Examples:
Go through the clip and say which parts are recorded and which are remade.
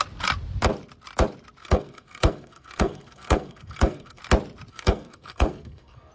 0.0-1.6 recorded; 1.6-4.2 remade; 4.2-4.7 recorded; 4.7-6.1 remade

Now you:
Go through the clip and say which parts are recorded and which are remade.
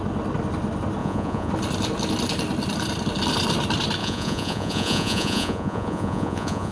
0.0-1.0 recorded; 1.0-1.5 remade; 1.5-4.0 recorded; 4.0-6.7 remade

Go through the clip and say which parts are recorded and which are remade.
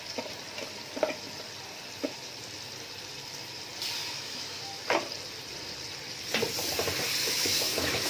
0.0-4.0 recorded; 4.0-4.6 remade; 4.6-7.2 recorded; 7.2-8.1 remade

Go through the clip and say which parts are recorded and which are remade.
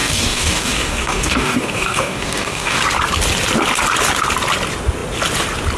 0.0-2.8 remade; 2.8-5.8 recorded